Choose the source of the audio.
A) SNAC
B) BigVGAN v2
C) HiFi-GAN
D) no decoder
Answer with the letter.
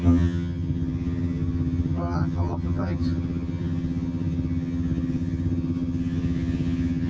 C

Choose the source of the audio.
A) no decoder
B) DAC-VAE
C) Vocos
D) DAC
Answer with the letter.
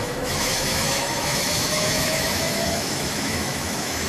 B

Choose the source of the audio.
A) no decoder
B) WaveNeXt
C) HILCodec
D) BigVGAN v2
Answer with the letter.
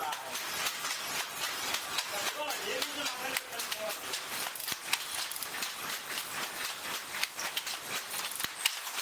A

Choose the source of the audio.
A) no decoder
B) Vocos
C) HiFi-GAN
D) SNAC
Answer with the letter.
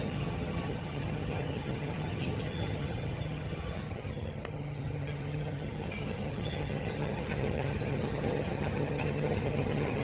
C